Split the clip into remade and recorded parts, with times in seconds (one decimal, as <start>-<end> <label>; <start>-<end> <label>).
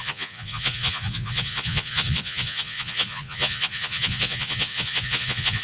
0.0-5.6 remade